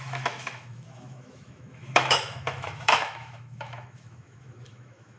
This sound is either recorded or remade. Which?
remade